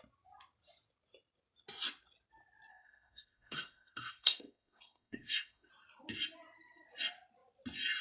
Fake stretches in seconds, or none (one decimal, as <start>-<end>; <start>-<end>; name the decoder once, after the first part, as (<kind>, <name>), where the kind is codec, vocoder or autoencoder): 2.7-5.7 (codec, SNAC)